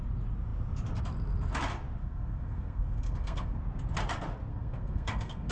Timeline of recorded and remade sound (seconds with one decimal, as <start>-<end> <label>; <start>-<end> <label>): 0.0-2.0 recorded; 2.0-3.6 remade; 3.6-4.5 recorded; 4.5-5.5 remade